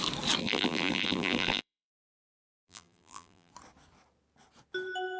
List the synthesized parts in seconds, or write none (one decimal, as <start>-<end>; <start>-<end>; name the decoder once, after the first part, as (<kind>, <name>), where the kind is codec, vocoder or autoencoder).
0.4-3.5 (vocoder, BigVGAN v2)